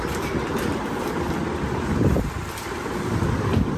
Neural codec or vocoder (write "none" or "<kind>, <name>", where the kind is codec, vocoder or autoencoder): vocoder, BigVGAN v2